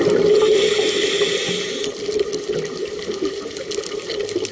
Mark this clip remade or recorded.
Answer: recorded